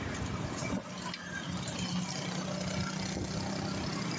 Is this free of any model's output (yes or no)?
yes